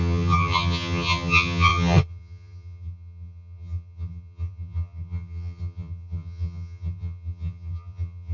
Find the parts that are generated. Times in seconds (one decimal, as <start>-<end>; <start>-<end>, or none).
0.0-8.3